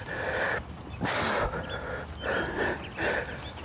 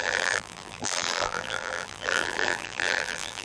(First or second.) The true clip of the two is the first